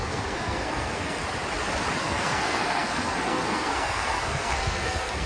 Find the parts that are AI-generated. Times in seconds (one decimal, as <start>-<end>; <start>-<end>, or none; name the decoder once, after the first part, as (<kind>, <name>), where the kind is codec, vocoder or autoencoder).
0.0-1.2 (codec, SNAC); 2.0-5.3